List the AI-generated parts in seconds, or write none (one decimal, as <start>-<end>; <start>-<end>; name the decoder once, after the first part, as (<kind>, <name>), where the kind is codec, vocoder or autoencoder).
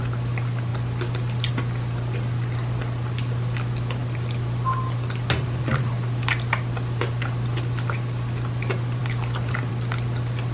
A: none